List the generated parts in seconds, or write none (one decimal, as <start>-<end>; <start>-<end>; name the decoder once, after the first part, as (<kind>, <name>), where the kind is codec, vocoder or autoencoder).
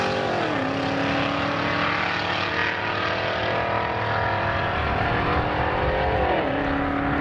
none